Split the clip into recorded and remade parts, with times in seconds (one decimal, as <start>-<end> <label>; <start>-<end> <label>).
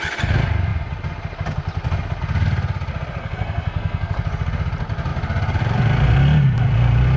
0.0-3.2 recorded; 3.2-4.1 remade; 4.1-7.2 recorded